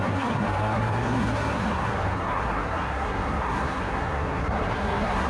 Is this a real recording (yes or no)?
no